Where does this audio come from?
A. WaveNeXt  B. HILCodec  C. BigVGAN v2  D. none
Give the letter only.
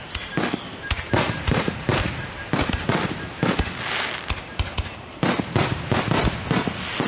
D